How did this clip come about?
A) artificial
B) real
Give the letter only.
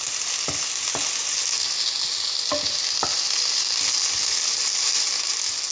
B